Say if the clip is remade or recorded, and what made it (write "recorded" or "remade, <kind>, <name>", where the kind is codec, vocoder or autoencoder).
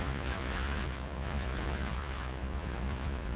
remade, vocoder, Vocos